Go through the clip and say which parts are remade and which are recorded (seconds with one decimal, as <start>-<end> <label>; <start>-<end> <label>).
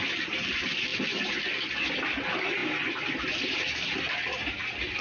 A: 0.0-5.0 recorded